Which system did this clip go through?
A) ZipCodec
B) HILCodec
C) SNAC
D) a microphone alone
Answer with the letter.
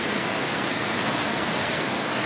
C